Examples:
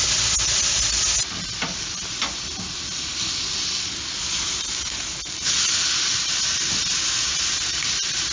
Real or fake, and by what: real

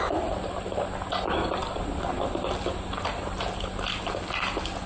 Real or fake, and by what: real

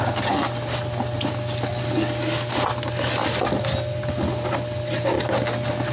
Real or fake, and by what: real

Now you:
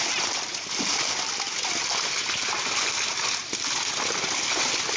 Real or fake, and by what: real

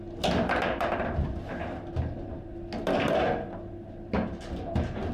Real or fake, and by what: real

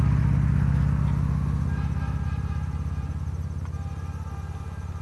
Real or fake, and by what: real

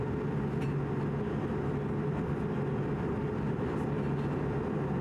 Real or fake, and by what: real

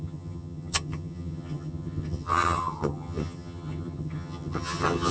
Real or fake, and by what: fake, vocoder, HiFi-GAN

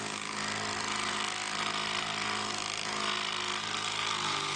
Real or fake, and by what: real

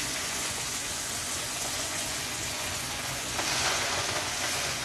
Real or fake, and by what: fake, vocoder, Vocos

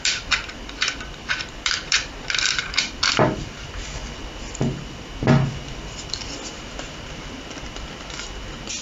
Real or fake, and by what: fake, vocoder, BigVGAN v2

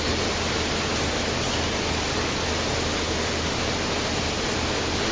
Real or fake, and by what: real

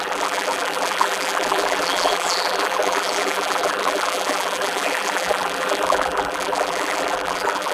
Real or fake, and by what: fake, vocoder, BigVGAN v2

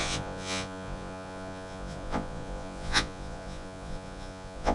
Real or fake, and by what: fake, vocoder, Vocos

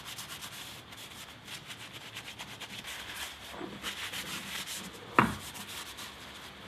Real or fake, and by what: real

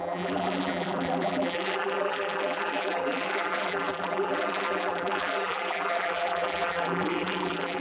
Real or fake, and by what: fake, vocoder, BigVGAN v2